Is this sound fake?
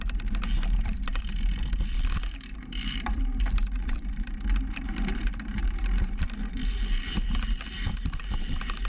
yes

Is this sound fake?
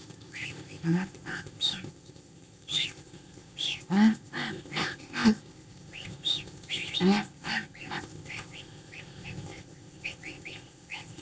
yes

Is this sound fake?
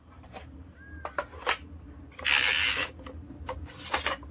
no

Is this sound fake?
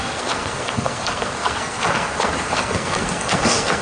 yes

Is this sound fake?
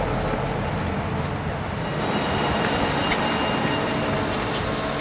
no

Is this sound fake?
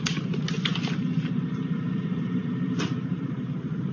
yes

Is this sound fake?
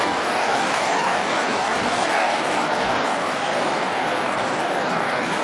yes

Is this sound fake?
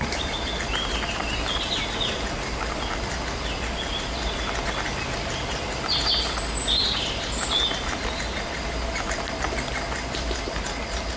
no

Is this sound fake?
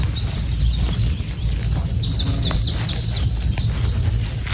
no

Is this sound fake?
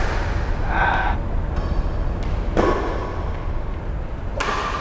no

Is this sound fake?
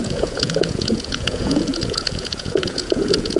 yes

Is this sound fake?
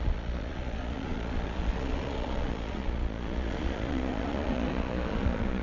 yes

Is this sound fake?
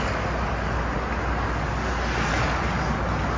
no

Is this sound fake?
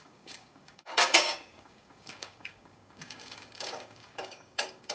yes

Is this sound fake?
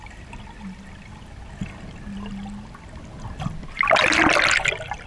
no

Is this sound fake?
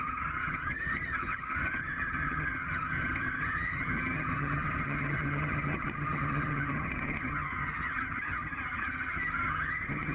yes